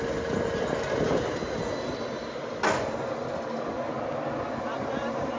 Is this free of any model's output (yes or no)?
yes